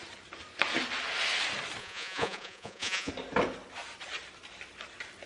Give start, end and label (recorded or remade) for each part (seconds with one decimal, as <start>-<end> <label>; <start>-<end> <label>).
0.0-1.8 recorded; 1.8-3.1 remade; 3.1-5.3 recorded